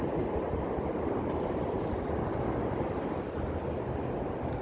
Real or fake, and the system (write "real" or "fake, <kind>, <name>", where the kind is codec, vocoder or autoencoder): real